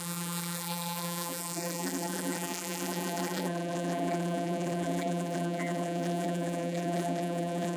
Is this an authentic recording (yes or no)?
no